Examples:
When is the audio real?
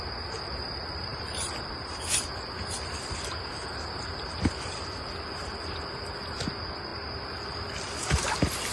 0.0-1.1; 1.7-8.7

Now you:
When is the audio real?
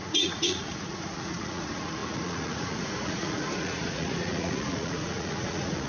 none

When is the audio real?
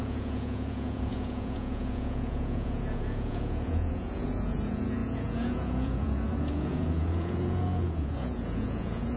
none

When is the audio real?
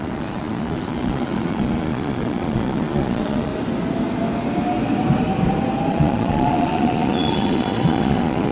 3.5-5.9